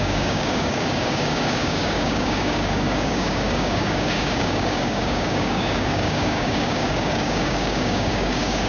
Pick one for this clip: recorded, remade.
remade